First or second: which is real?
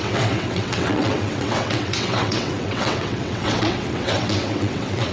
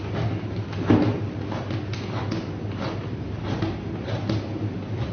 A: second